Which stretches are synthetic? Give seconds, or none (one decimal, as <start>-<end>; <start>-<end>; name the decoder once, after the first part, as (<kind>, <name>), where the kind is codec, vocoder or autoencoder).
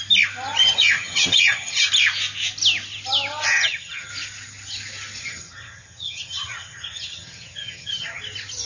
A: 0.6-1.9 (vocoder, HiFi-GAN); 3.5-4.1; 5.2-8.2